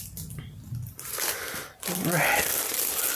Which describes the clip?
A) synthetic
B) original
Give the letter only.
A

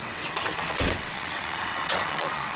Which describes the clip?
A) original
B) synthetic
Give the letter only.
B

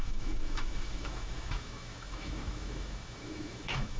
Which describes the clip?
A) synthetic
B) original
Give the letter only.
A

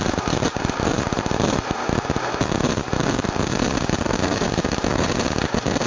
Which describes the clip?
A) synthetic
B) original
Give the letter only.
A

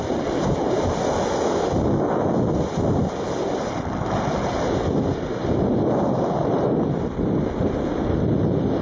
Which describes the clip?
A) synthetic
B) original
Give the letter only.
B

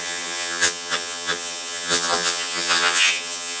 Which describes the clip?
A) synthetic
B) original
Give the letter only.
A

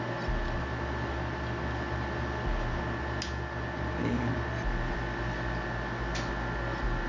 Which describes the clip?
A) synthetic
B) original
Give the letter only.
B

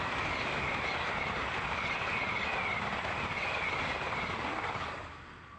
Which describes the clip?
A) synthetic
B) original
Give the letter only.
B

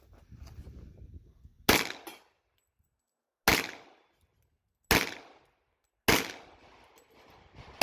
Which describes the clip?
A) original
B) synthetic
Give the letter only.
A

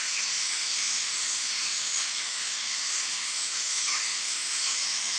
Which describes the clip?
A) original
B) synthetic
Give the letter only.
B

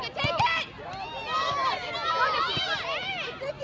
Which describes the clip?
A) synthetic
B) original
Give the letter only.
A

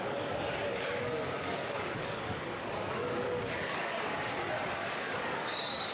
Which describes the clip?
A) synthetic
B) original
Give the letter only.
A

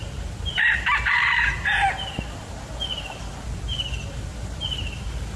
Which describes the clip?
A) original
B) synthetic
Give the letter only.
A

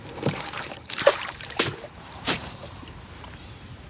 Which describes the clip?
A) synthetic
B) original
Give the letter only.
A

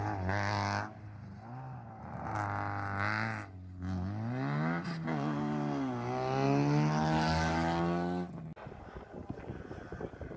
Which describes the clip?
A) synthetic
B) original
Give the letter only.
B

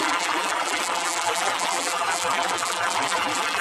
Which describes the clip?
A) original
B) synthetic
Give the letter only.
B